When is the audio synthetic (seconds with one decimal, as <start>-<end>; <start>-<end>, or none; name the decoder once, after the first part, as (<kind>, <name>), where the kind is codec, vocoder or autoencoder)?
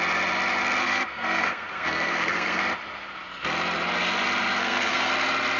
0.8-2.6 (codec, SNAC); 4.6-5.1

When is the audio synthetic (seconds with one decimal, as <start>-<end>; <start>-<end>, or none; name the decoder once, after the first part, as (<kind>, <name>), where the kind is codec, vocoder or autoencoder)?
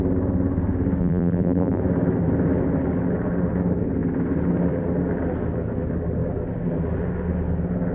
1.0-1.8 (vocoder, BigVGAN v2)